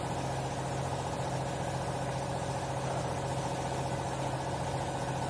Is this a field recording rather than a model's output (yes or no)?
yes